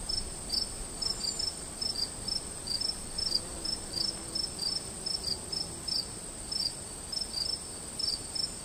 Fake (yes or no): no